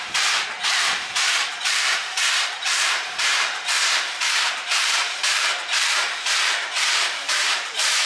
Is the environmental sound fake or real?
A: fake